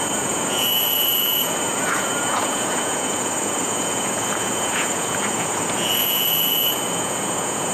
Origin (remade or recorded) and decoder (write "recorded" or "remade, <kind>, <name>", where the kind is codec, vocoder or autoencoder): remade, vocoder, Vocos